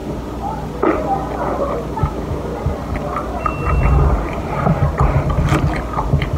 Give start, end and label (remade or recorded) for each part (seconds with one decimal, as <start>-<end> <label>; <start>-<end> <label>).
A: 0.0-2.0 recorded; 2.0-2.5 remade; 2.5-6.4 recorded

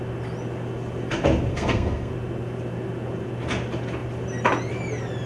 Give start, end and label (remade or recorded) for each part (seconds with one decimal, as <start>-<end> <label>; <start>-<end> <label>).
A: 0.0-1.5 recorded; 1.5-2.1 remade; 2.1-5.3 recorded

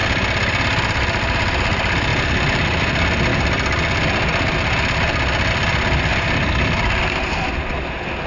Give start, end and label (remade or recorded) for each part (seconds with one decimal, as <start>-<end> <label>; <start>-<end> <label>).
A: 0.0-2.1 recorded; 2.1-2.8 remade; 2.8-6.1 recorded; 6.1-7.0 remade; 7.0-8.3 recorded

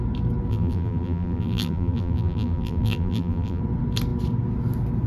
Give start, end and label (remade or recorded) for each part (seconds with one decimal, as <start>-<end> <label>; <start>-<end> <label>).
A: 0.0-0.5 recorded; 0.5-3.6 remade; 3.6-5.1 recorded